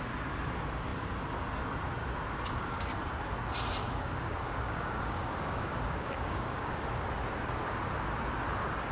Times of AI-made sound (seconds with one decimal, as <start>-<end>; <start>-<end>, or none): 3.8-6.7

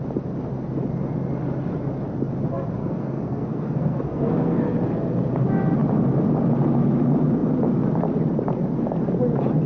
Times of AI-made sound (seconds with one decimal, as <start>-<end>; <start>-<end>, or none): 2.8-4.6